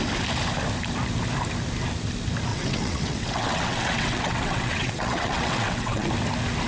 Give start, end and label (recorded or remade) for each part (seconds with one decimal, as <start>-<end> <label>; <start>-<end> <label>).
0.0-2.5 recorded; 2.5-6.1 remade; 6.1-6.7 recorded

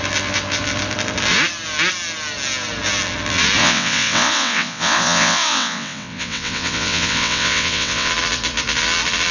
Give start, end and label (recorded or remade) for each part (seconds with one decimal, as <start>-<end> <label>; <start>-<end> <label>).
0.0-3.6 recorded; 3.6-8.1 remade; 8.1-9.3 recorded

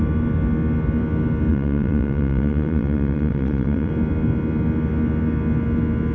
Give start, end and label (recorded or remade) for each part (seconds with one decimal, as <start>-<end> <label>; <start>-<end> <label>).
0.0-1.5 recorded; 1.5-3.9 remade; 3.9-6.1 recorded

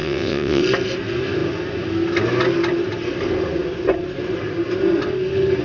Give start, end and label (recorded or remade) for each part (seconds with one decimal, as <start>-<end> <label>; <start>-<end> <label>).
0.0-0.6 remade; 0.6-5.6 recorded

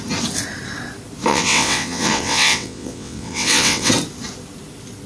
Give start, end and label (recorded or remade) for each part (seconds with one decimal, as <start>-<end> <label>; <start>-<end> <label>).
0.0-1.3 recorded; 1.3-3.9 remade; 3.9-5.1 recorded

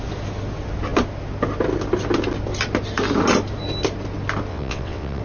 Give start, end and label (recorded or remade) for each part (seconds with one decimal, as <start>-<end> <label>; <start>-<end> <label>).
0.0-4.5 recorded; 4.5-5.2 remade

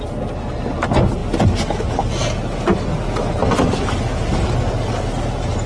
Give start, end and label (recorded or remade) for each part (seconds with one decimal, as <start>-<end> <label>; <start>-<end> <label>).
0.0-5.7 recorded

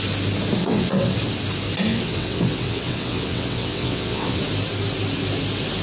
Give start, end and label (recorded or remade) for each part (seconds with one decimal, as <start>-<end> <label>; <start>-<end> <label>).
0.0-0.6 recorded; 0.6-1.2 remade; 1.2-1.9 recorded; 1.9-4.4 remade; 4.4-5.8 recorded